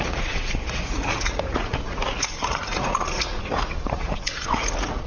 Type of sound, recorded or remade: remade